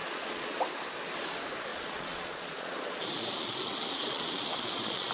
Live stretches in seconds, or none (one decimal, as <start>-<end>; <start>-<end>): 0.6-1.7